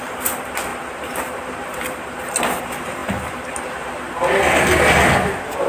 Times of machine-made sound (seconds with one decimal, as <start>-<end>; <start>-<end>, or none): none